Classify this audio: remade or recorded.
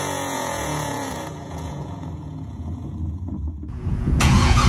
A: remade